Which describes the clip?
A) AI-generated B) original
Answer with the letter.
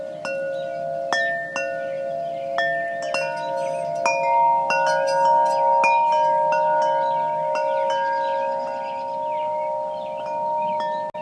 B